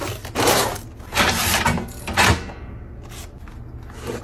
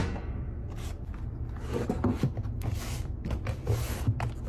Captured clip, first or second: first